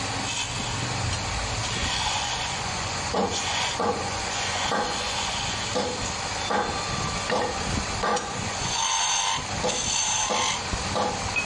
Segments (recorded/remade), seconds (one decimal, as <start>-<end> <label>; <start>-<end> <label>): 0.0-1.8 recorded; 1.8-5.6 remade; 5.6-8.1 recorded; 8.1-8.8 remade; 8.8-11.5 recorded